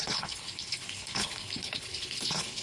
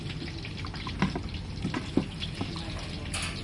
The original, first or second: second